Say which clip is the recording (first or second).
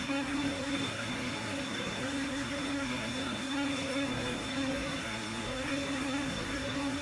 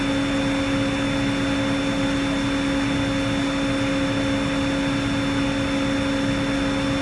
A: second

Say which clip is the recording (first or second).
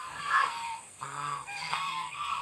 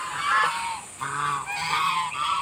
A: second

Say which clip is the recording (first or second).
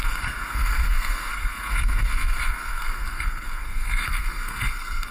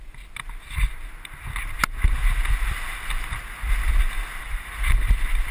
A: second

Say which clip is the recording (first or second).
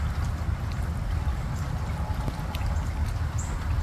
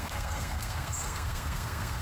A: first